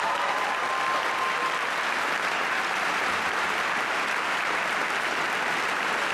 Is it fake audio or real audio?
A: real